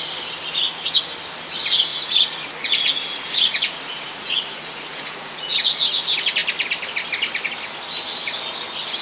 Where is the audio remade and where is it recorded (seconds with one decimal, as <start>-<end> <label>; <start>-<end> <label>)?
0.0-1.9 recorded; 1.9-5.9 remade; 5.9-9.0 recorded